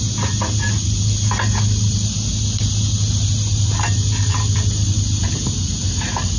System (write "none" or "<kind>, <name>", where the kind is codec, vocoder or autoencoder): none